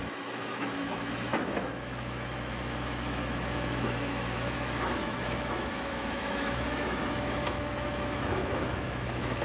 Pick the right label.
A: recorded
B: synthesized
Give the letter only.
B